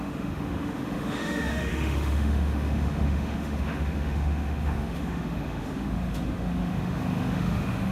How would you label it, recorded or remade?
remade